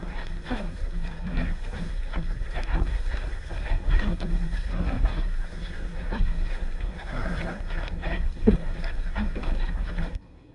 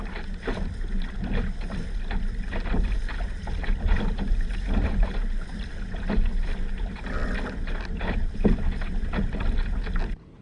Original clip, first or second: second